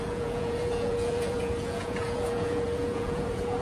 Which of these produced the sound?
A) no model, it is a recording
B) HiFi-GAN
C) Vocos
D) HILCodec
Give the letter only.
C